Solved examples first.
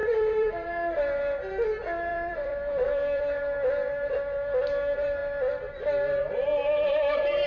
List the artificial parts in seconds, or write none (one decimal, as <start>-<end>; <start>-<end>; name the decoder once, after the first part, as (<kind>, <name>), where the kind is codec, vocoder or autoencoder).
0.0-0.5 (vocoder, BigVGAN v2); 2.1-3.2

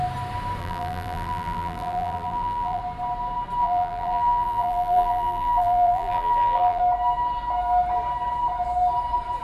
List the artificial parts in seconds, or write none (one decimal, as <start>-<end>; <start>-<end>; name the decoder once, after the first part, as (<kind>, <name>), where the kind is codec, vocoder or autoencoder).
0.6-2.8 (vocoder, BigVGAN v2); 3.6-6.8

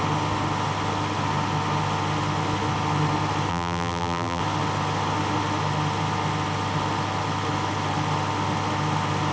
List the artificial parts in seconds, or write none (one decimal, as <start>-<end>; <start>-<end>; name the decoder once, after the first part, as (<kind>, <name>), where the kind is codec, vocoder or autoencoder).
3.5-4.4 (vocoder, BigVGAN v2)